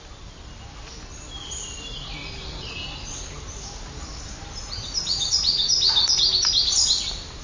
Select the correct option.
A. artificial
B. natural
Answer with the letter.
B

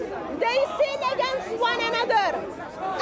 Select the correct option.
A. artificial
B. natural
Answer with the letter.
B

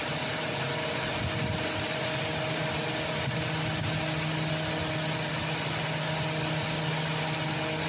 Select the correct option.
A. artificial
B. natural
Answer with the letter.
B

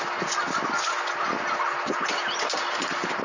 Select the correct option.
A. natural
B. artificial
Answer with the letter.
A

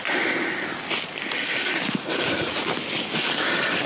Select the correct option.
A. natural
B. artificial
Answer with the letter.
A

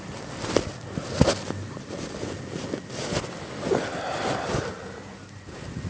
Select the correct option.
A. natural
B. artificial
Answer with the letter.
A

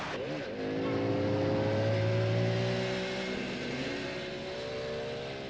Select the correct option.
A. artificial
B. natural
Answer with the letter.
B